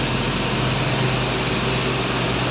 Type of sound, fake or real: real